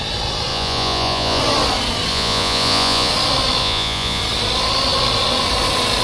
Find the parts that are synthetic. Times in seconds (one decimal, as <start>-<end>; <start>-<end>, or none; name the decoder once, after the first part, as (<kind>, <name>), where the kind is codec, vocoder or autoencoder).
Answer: 0.5-1.4 (vocoder, Vocos); 2.1-3.1; 3.6-4.2